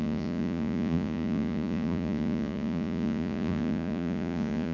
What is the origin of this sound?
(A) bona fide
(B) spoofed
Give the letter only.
B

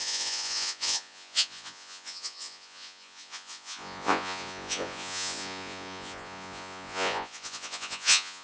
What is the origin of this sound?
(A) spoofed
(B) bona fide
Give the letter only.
A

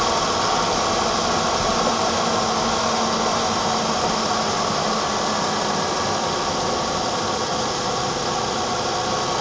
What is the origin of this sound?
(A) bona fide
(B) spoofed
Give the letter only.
A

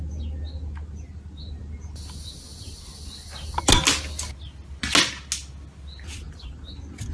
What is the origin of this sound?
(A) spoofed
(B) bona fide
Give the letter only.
B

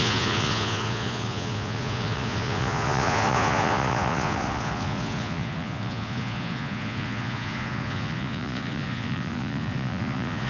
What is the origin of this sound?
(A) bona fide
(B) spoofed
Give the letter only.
B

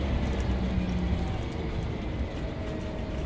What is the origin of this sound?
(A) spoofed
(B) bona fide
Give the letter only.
B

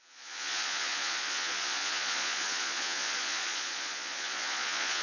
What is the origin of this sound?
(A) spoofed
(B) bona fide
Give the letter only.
A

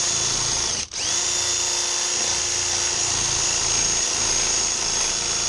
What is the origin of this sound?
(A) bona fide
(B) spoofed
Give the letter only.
A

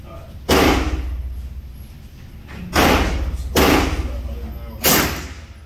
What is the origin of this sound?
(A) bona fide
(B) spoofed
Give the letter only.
A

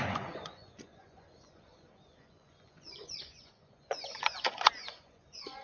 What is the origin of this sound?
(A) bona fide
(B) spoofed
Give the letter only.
B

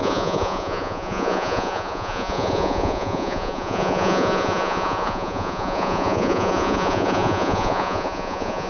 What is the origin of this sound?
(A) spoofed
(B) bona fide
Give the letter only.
A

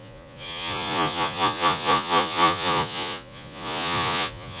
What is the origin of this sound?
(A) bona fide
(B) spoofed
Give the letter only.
B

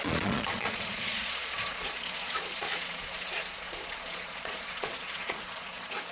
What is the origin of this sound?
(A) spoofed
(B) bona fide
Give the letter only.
A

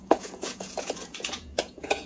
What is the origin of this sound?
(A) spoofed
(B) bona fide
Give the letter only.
A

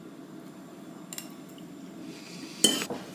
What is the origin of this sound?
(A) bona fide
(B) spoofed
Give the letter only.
A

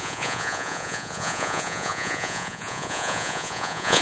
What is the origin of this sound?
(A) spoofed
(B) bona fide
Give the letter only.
A